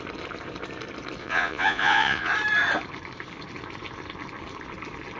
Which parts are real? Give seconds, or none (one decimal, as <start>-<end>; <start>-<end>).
0.0-1.2; 2.3-5.2